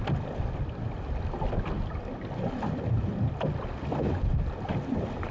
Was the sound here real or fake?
real